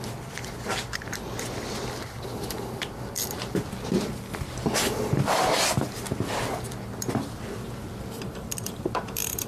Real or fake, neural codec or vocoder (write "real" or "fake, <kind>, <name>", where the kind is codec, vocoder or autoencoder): fake, vocoder, BigVGAN v2